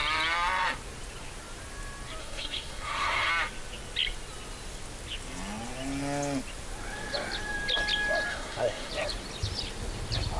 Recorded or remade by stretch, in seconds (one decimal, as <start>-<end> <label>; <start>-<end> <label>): 0.0-2.2 recorded; 2.2-3.3 remade; 3.3-8.3 recorded; 8.3-8.9 remade; 8.9-10.4 recorded